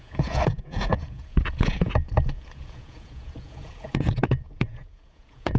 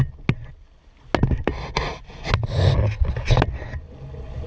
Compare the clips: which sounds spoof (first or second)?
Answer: first